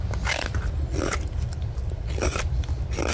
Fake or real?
fake